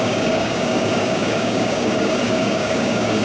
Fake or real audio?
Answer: fake